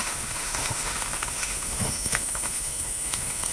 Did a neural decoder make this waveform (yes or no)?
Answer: yes